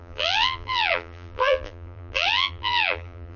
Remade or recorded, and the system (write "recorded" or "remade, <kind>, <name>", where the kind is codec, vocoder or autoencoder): remade, vocoder, BigVGAN v2